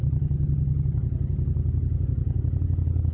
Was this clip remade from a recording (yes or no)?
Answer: no